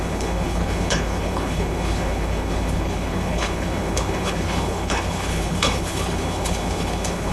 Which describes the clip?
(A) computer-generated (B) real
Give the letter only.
A